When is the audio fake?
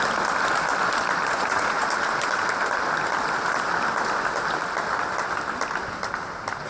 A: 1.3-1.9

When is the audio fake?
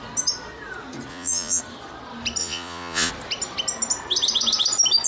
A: 1.1-1.6; 2.4-3.1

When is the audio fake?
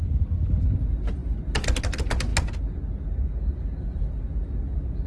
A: none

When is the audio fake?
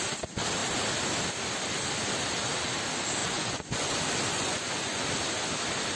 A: 3.2-3.9; 4.3-5.0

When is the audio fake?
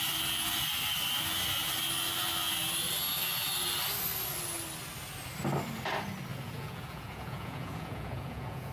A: 6.3-8.7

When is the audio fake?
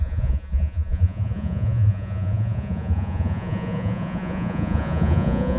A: 0.0-5.6